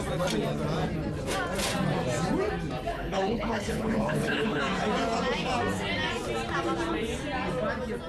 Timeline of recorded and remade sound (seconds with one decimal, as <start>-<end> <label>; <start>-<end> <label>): 0.0-2.9 recorded; 2.9-4.6 remade; 4.6-8.1 recorded